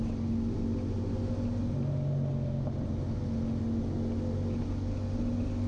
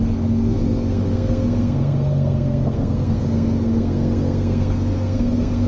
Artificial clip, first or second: second